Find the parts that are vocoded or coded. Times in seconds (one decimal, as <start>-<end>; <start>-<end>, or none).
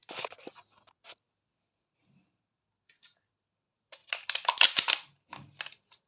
none